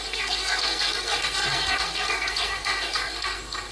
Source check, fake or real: fake